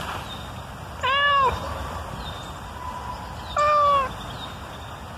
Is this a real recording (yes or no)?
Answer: yes